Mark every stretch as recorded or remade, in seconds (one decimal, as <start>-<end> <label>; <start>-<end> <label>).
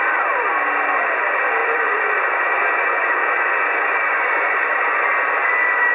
0.0-1.6 recorded; 1.6-5.1 remade; 5.1-5.9 recorded